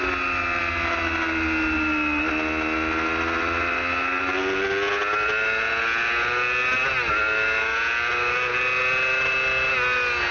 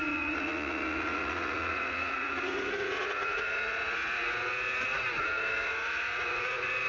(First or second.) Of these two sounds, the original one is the first